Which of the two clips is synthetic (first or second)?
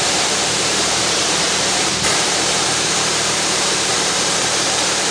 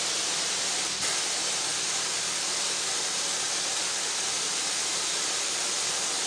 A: first